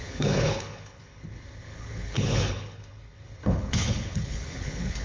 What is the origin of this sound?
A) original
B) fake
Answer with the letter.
B